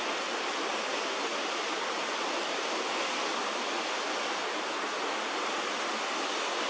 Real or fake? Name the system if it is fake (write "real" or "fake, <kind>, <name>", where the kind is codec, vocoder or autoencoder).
real